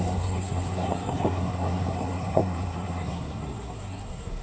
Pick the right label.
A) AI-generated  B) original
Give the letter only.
A